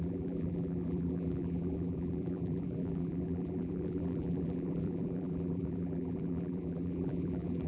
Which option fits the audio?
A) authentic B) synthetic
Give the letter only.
B